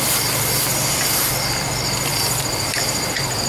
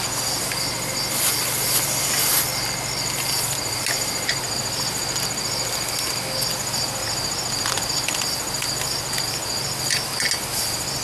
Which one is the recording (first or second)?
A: second